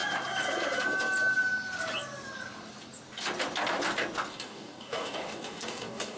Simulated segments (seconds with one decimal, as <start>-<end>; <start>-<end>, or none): 4.3-6.2